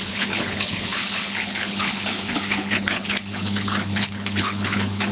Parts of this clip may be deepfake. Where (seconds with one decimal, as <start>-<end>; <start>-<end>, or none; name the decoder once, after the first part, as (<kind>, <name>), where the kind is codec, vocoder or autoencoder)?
0.0-5.1 (codec, HILCodec)